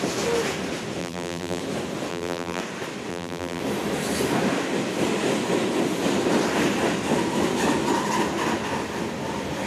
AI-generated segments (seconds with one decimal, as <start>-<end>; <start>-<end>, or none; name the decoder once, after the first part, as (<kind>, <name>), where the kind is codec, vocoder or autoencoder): 1.0-1.6 (vocoder, BigVGAN v2); 2.1-2.6; 3.1-3.6